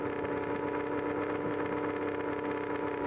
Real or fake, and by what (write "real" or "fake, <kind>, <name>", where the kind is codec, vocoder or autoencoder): real